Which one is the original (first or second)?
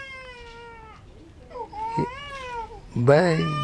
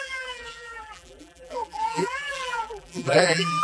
first